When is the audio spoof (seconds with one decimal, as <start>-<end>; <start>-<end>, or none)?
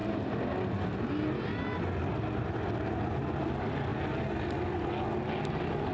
none